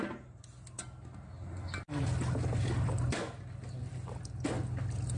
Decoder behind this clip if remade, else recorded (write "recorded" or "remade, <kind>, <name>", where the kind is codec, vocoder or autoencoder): recorded